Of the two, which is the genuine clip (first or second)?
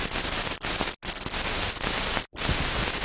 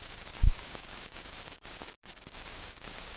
first